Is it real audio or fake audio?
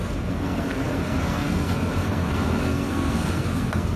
fake